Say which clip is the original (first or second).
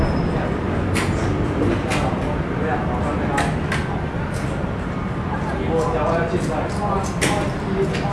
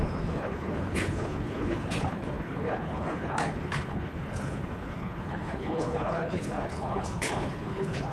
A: first